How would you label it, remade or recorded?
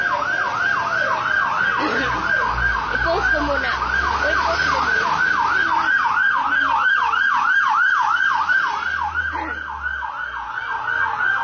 recorded